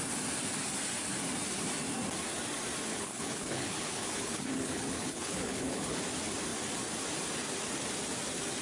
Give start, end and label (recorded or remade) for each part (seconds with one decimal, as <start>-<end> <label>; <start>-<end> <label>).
0.0-2.9 recorded; 2.9-6.0 remade; 6.0-8.6 recorded